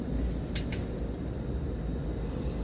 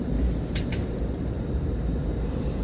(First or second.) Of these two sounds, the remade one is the second